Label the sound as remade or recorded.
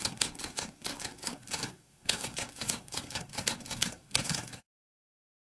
remade